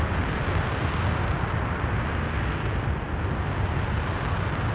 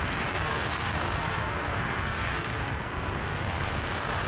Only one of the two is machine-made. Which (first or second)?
second